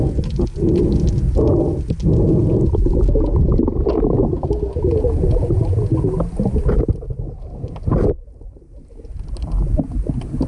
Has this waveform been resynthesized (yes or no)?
no